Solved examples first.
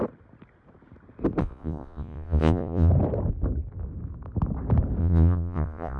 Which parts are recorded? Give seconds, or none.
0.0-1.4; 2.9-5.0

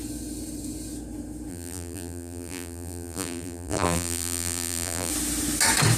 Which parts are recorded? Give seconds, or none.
0.0-1.5; 5.1-6.0